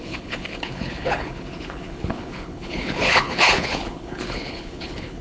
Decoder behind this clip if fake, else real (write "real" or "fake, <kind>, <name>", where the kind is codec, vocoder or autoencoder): fake, codec, HILCodec